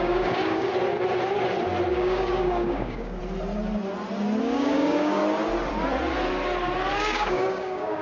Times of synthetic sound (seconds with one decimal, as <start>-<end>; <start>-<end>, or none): 0.0-0.7; 1.9-3.2; 4.4-5.2; 6.9-8.0